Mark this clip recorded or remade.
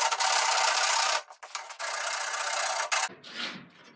recorded